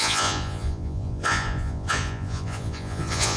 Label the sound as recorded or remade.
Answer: remade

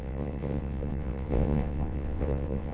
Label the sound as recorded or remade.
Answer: remade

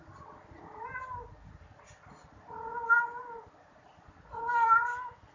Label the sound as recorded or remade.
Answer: recorded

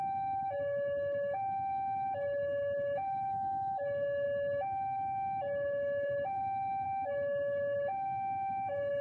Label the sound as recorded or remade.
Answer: remade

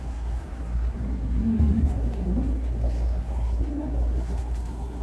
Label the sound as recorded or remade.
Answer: remade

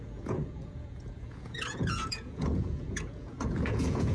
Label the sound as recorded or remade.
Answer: remade